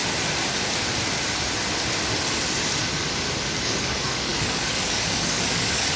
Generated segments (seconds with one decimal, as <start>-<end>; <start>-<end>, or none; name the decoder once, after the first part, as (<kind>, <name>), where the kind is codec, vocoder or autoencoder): 3.6-6.0 (codec, DAC)